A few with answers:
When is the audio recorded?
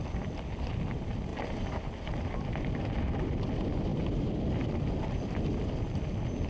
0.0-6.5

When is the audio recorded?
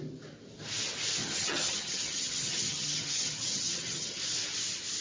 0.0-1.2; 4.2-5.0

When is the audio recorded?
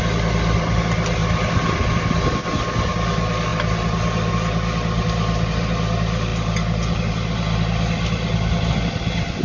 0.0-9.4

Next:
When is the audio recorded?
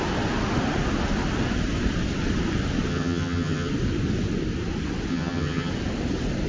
0.0-2.9; 3.7-5.1; 5.7-6.5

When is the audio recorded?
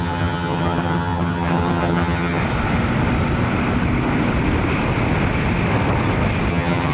2.4-6.5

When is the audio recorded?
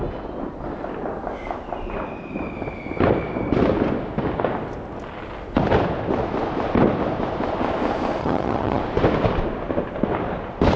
0.0-8.2; 8.8-10.8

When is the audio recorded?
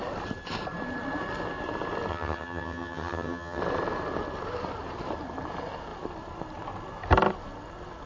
0.0-2.1; 3.6-8.1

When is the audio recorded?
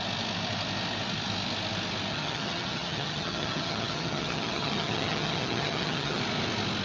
0.0-2.1; 6.2-6.8